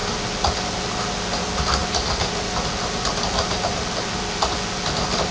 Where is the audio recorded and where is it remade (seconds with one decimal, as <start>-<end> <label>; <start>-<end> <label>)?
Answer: 0.0-5.3 recorded